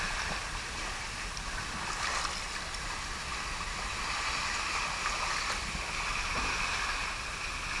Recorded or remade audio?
recorded